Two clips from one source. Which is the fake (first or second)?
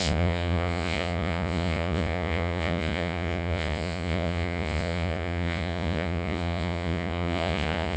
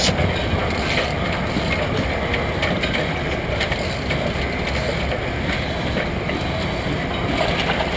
first